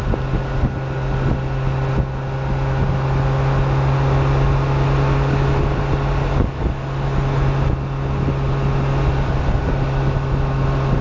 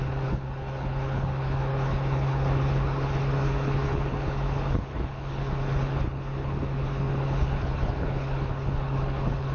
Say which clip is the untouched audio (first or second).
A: first